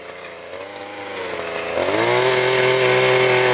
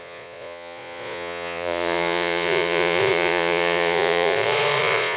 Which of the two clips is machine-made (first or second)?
second